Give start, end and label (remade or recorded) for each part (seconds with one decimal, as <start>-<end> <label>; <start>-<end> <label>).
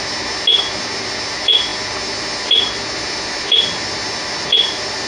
0.0-5.1 recorded